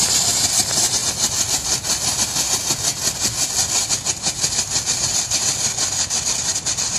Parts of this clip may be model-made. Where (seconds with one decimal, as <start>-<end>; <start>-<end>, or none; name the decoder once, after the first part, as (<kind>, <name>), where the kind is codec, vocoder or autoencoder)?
none